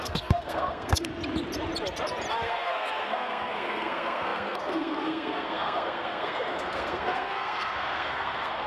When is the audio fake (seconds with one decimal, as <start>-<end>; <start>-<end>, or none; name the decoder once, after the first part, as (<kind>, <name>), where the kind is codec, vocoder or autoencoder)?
0.0-1.1 (codec, SNAC); 2.3-8.7